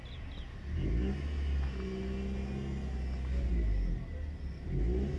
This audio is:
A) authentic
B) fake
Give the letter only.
A